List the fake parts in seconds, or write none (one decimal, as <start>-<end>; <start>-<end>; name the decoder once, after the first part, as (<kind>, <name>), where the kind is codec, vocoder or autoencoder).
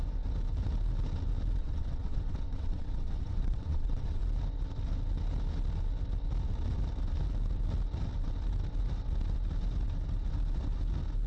1.6-4.2 (vocoder, WaveNeXt)